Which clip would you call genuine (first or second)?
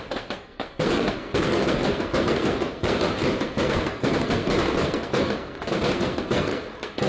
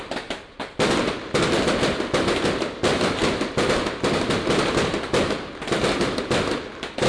second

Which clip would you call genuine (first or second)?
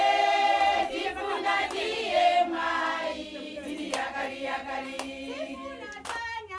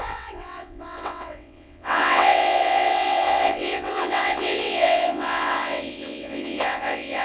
first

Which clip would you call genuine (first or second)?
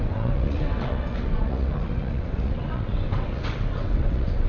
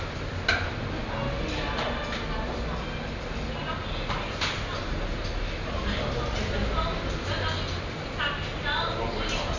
second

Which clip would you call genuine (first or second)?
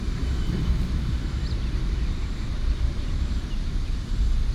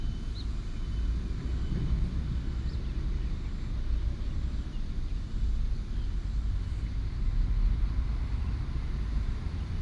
second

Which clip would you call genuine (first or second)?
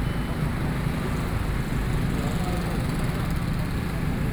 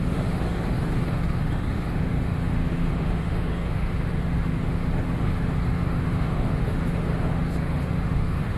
first